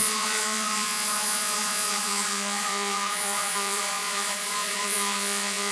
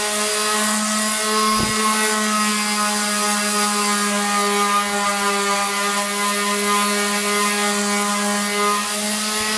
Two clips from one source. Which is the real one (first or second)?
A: second